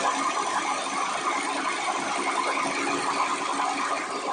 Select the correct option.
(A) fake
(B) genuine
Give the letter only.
B